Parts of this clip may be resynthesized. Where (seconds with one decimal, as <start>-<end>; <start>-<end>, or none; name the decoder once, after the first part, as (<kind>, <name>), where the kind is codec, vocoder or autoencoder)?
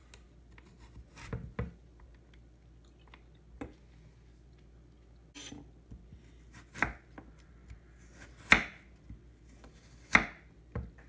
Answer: none